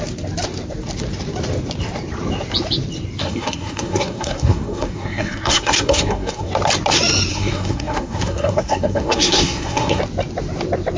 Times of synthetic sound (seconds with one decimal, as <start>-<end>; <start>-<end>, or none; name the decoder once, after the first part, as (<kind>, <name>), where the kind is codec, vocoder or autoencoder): 3.2-6.5 (codec, SNAC); 7.3-10.0

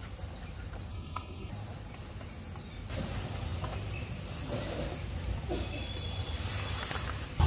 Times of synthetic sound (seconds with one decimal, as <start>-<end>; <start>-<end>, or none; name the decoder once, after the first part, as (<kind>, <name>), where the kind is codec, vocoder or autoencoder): 0.9-1.5 (codec, SNAC)

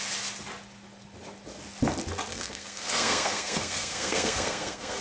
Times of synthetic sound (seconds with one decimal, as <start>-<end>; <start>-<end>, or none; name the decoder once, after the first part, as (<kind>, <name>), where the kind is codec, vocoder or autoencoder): 2.3-5.0 (codec, SNAC)